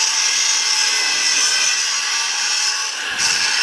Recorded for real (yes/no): yes